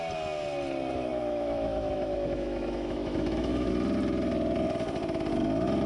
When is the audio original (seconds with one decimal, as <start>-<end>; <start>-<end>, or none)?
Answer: 0.0-1.1; 3.7-5.9

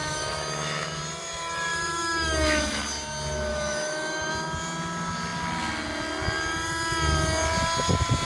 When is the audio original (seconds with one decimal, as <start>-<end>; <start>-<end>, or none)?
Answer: 1.0-1.7; 2.8-3.5; 4.3-8.2